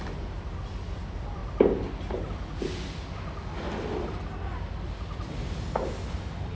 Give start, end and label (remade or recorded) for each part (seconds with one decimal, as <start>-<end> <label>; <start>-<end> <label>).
0.0-6.5 recorded

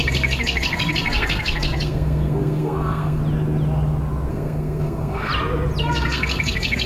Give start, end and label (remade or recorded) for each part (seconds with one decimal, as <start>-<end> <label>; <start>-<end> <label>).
0.0-3.2 remade; 3.2-4.3 recorded; 4.3-5.3 remade; 5.3-5.8 recorded; 5.8-6.9 remade

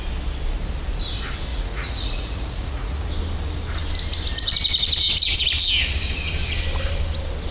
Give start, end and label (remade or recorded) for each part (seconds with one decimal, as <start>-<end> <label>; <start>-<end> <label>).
0.0-1.5 recorded; 1.5-3.1 remade; 3.1-7.5 recorded